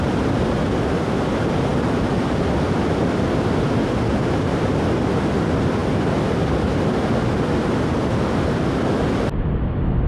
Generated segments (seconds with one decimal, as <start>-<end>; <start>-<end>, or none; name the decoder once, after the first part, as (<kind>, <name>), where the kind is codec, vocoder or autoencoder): none